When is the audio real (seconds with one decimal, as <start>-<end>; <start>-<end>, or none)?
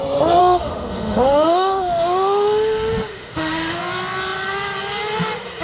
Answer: 0.0-0.4; 3.8-5.6